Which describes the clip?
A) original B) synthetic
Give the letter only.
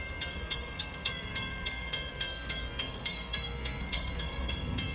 B